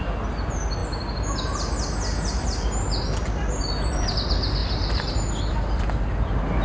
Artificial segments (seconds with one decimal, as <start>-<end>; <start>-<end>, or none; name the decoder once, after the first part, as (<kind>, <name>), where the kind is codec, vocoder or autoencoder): 4.6-5.1 (vocoder, BigVGAN v2)